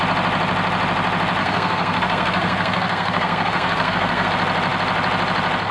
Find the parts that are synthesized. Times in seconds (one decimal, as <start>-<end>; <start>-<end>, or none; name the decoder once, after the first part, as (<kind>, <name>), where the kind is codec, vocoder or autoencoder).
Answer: 1.4-4.3 (codec, SNAC)